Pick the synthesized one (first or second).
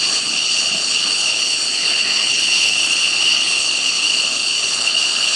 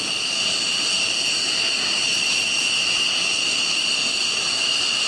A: first